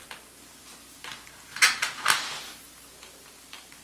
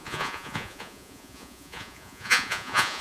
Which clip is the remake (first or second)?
second